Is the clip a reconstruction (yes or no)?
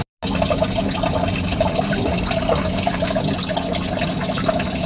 no